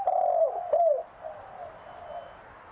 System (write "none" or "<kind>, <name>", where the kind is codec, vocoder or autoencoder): none